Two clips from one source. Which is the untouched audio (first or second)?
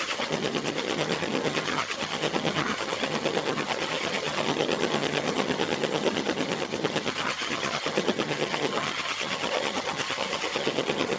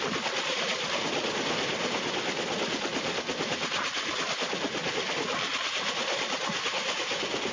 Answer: second